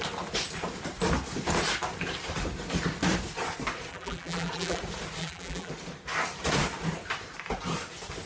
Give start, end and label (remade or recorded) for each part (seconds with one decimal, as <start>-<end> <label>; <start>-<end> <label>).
0.0-3.9 recorded; 3.9-4.8 remade; 4.8-5.2 recorded; 5.2-5.7 remade; 5.7-8.3 recorded